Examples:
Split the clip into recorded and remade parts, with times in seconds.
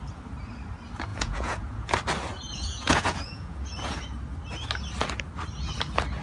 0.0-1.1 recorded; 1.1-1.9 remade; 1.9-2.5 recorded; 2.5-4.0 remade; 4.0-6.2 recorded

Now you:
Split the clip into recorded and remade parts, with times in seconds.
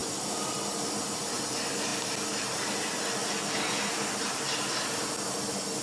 0.0-5.8 recorded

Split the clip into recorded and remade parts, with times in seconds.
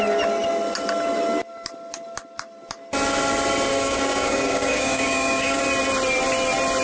0.0-3.7 recorded; 3.7-5.6 remade; 5.6-6.8 recorded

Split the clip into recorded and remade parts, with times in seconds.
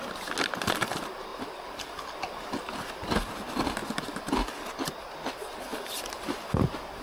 0.0-7.0 recorded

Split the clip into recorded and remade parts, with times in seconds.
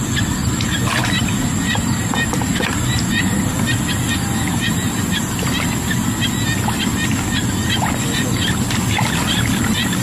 0.0-0.4 recorded; 0.4-3.5 remade; 3.5-10.0 recorded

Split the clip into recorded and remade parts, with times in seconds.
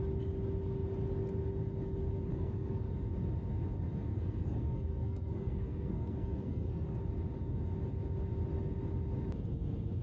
0.0-2.3 recorded; 2.3-2.8 remade; 2.8-4.1 recorded; 4.1-7.0 remade; 7.0-10.0 recorded